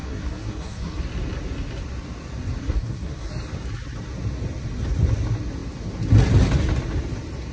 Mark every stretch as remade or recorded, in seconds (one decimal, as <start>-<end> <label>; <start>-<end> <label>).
0.0-1.0 remade; 1.0-2.6 recorded; 2.6-3.3 remade; 3.3-7.5 recorded